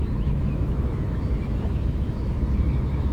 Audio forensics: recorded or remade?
remade